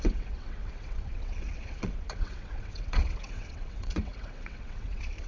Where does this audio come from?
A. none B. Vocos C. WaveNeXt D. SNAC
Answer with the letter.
C